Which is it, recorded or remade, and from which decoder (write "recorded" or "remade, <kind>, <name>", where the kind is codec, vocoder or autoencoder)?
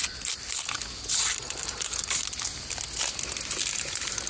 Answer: recorded